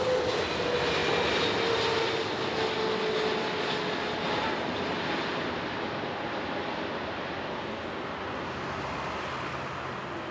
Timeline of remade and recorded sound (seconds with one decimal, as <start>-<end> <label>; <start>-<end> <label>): 0.0-10.3 recorded